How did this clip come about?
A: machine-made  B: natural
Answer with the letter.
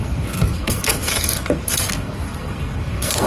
A